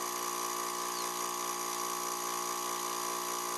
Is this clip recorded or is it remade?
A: recorded